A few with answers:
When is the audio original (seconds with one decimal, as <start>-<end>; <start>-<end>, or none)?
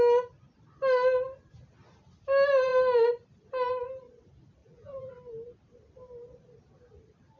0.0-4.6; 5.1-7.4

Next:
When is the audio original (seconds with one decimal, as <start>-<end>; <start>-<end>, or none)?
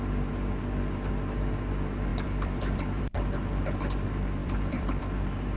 0.0-2.1; 3.0-4.4; 5.0-5.6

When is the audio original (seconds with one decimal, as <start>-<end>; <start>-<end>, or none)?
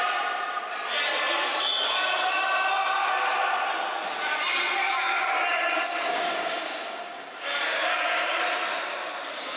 0.0-6.1; 8.4-9.6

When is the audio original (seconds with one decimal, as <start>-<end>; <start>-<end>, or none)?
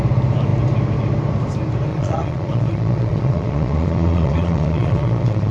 0.0-1.9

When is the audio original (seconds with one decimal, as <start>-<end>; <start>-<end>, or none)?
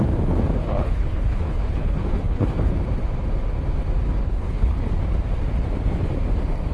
0.0-0.6; 2.7-4.2; 4.9-6.7